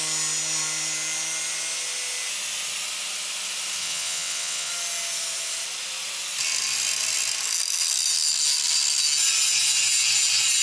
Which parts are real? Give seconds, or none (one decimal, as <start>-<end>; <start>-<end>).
0.0-3.8; 4.7-10.6